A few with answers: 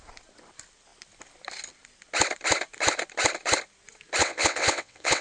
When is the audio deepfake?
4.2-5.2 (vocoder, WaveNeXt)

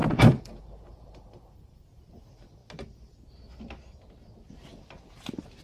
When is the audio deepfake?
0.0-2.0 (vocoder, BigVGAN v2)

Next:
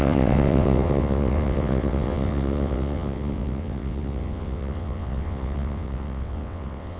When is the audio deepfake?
0.0-7.0 (vocoder, WaveNeXt)

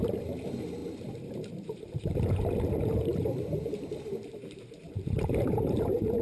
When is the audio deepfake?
0.0-6.2 (vocoder, BigVGAN v2)

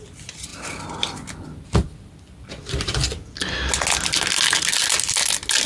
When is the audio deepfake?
none